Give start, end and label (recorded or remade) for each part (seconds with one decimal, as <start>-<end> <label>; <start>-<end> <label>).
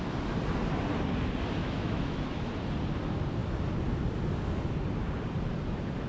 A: 0.0-1.6 recorded; 1.6-2.5 remade; 2.5-6.1 recorded